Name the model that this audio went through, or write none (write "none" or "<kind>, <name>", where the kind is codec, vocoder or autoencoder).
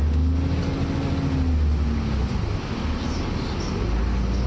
none